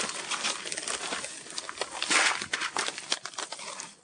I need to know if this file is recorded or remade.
recorded